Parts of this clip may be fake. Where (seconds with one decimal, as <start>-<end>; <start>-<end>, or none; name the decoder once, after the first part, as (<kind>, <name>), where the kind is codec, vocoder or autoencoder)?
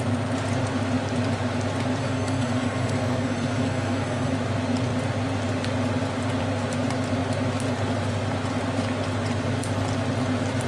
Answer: 2.0-4.3 (codec, SNAC)